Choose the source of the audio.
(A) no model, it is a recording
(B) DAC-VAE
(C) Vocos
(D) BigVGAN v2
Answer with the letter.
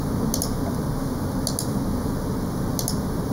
A